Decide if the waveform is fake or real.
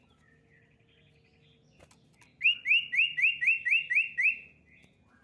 real